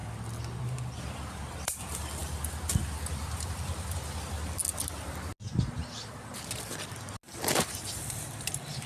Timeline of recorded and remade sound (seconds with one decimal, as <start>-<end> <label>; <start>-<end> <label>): 0.0-0.6 recorded; 0.6-2.2 remade; 2.2-7.3 recorded; 7.3-8.9 remade